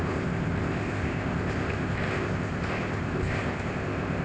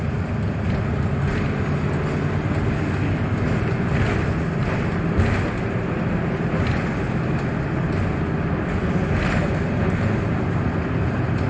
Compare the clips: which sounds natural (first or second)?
second